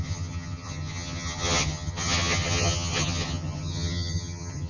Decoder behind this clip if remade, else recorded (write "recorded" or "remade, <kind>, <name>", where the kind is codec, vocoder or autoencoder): remade, vocoder, HiFi-GAN